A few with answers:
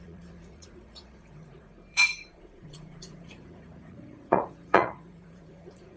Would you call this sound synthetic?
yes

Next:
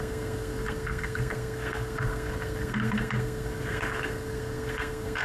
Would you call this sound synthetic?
yes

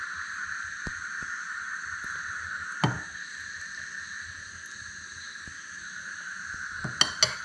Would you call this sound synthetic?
no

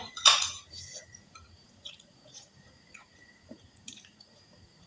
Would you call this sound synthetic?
yes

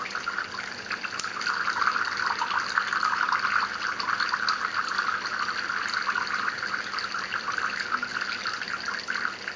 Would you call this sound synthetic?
no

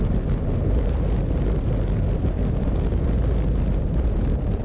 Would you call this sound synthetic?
no